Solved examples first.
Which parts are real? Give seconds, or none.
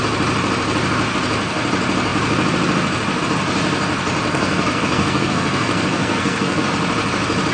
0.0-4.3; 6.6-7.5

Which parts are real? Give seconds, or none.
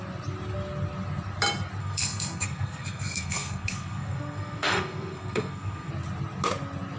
0.0-1.8; 5.9-7.0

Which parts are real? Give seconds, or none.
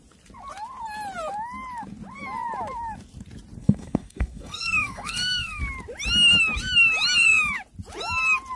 0.0-3.6; 5.6-8.6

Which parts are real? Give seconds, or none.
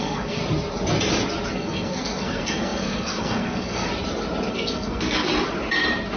0.4-1.5; 3.9-4.5; 5.3-6.2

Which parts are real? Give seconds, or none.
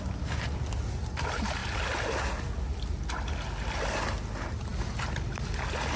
0.0-6.0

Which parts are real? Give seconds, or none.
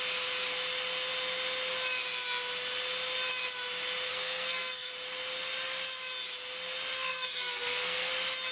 0.0-4.1; 4.9-6.9; 8.1-8.5